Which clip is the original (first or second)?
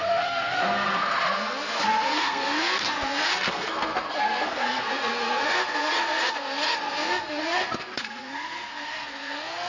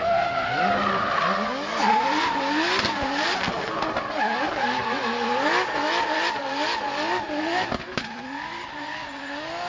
second